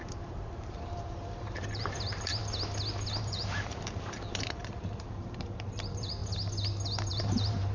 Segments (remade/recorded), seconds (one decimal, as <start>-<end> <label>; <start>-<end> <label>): 0.0-2.4 remade; 2.4-3.2 recorded; 3.2-6.2 remade; 6.2-7.1 recorded; 7.1-7.7 remade